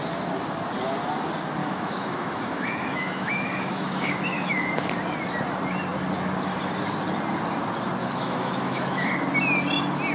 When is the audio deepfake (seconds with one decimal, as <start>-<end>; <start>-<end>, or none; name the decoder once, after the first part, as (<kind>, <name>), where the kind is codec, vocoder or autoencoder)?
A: 1.6-4.9 (autoencoder, DAC-VAE); 8.0-9.1